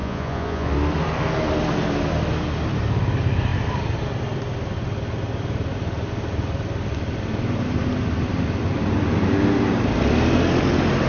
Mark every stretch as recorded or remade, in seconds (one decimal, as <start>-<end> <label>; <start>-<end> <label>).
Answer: 0.0-0.7 remade; 0.7-11.1 recorded